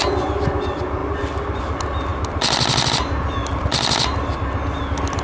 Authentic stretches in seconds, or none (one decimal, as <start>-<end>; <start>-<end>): 0.0-5.2